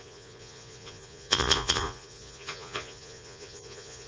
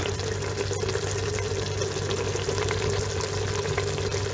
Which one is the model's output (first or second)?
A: first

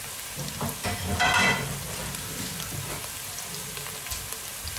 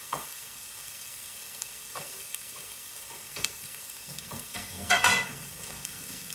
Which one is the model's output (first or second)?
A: second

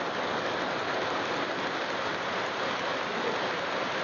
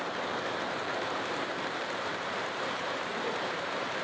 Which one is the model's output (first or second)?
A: second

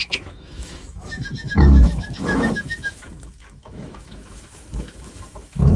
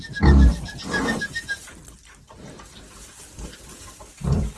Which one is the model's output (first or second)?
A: first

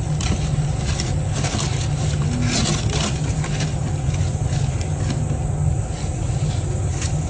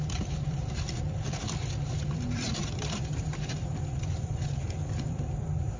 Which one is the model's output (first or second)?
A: second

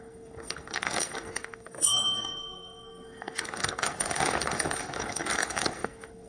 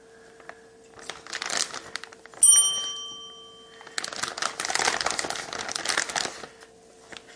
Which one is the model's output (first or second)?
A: first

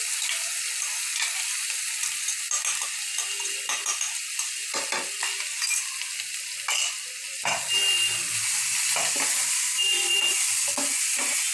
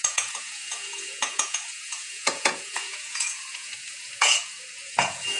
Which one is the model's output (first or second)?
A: second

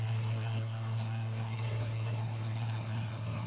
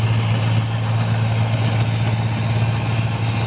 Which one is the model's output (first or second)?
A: first